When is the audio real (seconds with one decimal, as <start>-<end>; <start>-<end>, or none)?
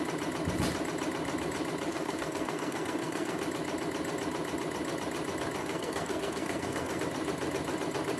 0.0-1.9; 3.4-5.6; 7.0-8.2